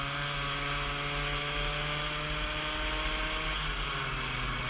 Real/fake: real